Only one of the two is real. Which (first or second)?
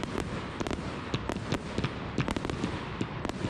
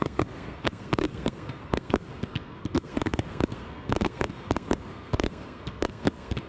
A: first